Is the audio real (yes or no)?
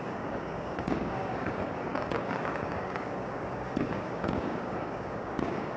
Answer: no